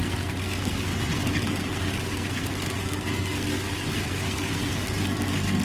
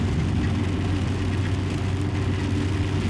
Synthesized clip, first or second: first